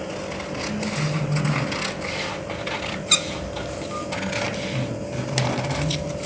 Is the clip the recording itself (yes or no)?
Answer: yes